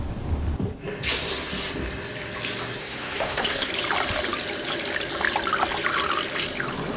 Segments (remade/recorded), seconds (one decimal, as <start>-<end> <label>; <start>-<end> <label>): 0.0-2.8 recorded; 2.8-3.7 remade; 3.7-7.0 recorded